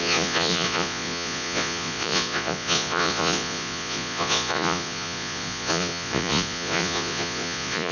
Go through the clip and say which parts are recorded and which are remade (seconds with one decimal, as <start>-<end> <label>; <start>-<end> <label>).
0.0-7.9 remade